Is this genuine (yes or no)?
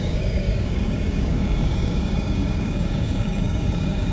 no